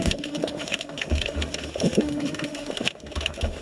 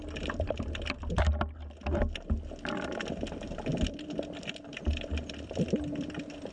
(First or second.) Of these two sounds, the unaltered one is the second